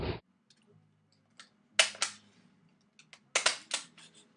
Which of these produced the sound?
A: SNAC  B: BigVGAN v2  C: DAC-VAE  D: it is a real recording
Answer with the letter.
D